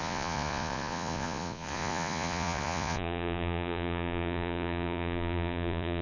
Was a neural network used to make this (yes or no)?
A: yes